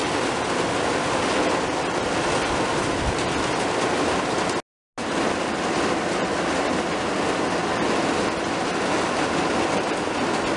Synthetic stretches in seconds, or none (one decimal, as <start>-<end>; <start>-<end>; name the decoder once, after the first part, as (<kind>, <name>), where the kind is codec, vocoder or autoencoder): none